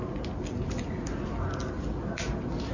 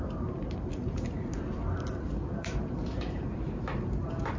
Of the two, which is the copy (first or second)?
second